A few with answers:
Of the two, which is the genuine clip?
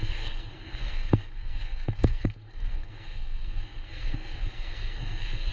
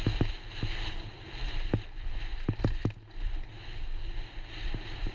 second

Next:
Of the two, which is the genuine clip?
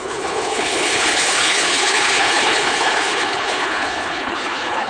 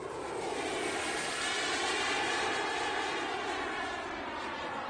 second